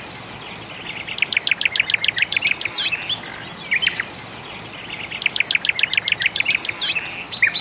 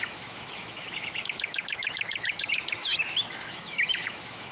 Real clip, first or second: first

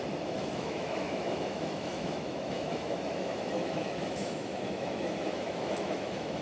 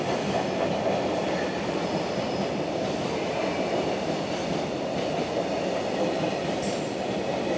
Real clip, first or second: second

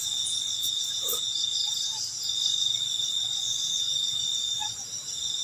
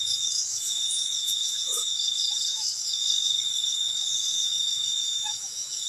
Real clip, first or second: first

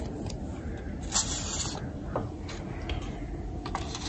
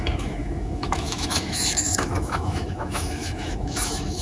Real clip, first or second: first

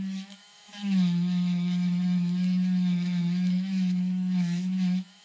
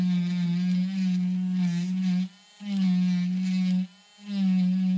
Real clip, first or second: second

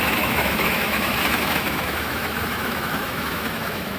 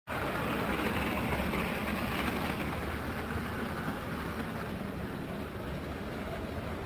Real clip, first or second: second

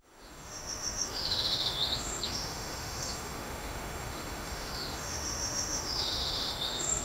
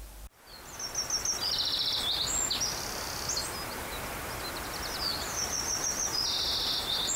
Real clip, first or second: second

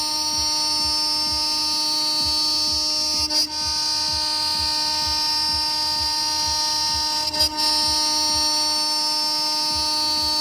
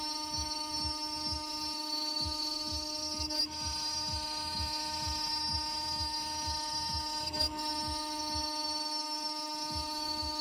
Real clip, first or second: first